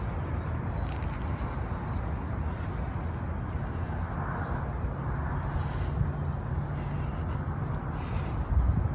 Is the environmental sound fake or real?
real